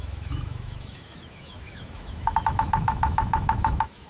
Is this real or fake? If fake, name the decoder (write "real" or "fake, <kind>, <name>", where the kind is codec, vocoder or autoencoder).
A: fake, autoencoder, DAC-VAE